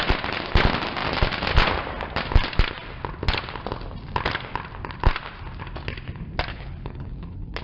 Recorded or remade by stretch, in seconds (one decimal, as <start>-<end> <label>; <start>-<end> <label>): 0.0-6.5 recorded; 6.5-7.6 remade